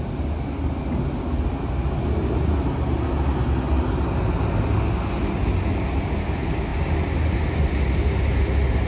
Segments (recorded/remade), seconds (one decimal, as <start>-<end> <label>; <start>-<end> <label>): 0.0-8.9 recorded